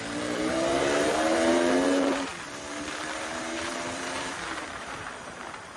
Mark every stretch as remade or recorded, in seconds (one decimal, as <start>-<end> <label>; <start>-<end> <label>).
0.0-2.3 remade; 2.3-3.4 recorded; 3.4-5.8 remade